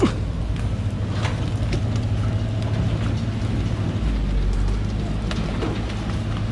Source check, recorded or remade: recorded